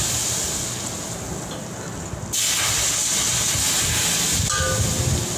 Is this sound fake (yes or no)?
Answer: no